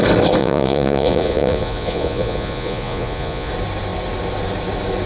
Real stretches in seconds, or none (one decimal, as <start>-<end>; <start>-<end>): 0.0-0.4; 3.5-5.1